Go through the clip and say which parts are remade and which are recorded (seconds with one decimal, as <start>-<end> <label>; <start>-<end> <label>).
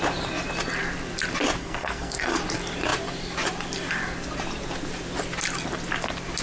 0.0-1.6 recorded; 1.6-2.4 remade; 2.4-6.4 recorded